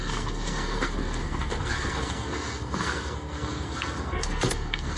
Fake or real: fake